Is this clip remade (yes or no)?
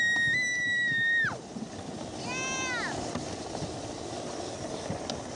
no